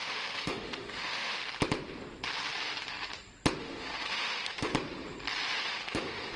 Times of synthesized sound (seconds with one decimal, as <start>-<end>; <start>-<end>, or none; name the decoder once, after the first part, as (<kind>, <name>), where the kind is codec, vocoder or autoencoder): 0.0-1.4 (autoencoder, DAC-VAE); 3.6-4.7; 5.6-6.4